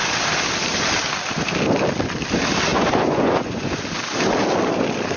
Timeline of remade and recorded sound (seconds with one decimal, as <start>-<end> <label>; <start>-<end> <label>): 0.0-2.7 recorded; 2.7-3.8 remade; 3.8-5.2 recorded